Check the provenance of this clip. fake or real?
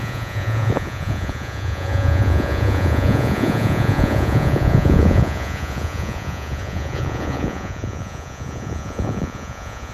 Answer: fake